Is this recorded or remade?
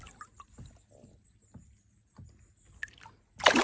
recorded